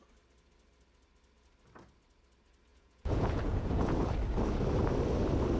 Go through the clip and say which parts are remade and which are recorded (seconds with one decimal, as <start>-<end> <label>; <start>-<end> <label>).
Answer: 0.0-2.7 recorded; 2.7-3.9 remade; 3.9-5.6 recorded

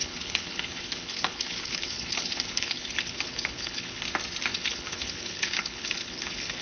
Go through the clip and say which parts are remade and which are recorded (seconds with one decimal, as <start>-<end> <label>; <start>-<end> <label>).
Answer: 0.0-4.0 remade; 4.0-4.5 recorded; 4.5-6.6 remade

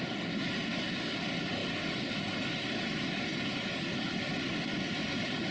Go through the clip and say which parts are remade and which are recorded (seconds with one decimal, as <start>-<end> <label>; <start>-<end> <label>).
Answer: 0.0-5.5 recorded

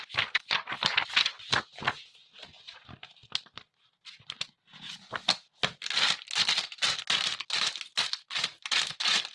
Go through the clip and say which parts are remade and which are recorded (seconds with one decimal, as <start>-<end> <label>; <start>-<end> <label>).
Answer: 0.0-9.3 recorded

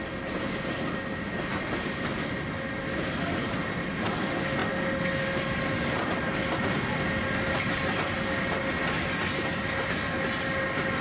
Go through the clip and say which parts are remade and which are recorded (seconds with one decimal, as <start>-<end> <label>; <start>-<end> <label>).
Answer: 0.0-11.0 recorded

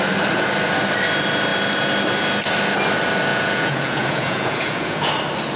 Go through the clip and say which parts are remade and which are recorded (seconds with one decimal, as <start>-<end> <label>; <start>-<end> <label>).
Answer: 0.0-3.3 recorded; 3.3-5.1 remade; 5.1-5.6 recorded